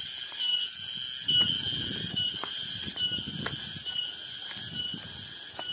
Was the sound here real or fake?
real